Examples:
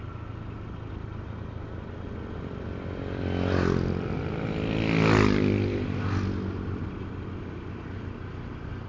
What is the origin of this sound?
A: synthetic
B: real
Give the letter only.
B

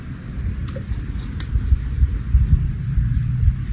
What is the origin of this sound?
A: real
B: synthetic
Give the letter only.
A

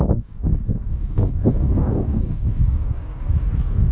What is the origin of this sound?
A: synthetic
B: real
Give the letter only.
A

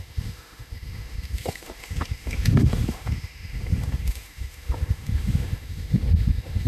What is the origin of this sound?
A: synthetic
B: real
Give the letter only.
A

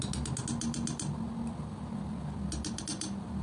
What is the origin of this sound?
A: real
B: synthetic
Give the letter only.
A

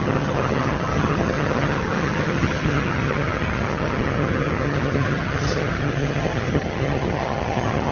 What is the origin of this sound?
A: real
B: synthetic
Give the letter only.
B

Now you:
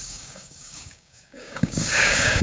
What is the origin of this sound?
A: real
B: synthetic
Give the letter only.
B